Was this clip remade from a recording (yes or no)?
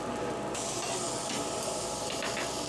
no